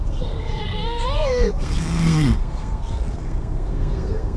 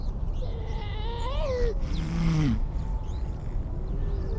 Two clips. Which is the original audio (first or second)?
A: second